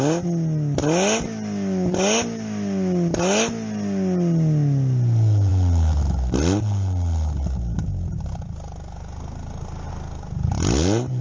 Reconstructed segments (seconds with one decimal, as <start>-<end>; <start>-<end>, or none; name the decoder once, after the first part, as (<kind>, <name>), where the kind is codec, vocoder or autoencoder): none